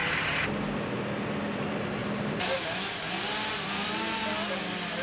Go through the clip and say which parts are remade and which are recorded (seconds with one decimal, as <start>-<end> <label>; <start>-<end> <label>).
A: 0.0-5.0 recorded